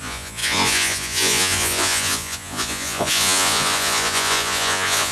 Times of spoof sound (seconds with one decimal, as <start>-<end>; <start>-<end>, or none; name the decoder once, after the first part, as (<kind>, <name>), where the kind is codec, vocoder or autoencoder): 0.0-5.1 (vocoder, Vocos)